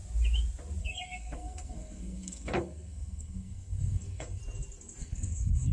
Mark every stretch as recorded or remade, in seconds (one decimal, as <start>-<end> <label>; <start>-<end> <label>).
0.0-0.8 recorded; 0.8-4.4 remade; 4.4-5.0 recorded; 5.0-5.7 remade